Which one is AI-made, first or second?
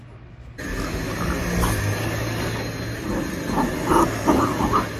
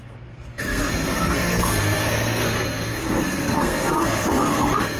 second